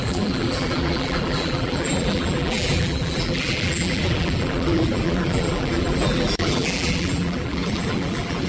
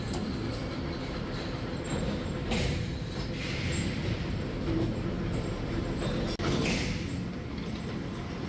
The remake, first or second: first